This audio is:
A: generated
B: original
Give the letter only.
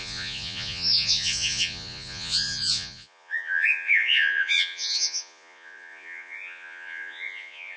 A